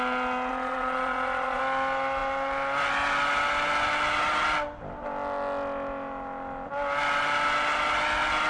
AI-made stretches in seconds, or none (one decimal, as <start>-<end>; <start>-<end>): 0.5-1.6